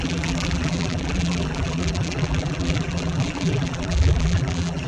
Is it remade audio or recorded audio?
remade